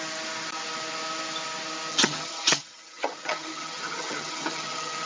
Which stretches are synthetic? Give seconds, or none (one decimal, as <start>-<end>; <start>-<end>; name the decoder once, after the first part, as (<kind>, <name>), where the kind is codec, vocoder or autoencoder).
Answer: 1.9-5.1 (vocoder, HiFi-GAN)